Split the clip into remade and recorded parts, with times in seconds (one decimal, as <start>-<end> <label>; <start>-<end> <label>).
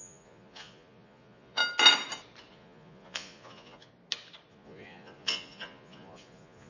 0.0-1.6 remade; 1.6-2.5 recorded; 2.5-3.9 remade; 3.9-4.5 recorded; 4.5-6.7 remade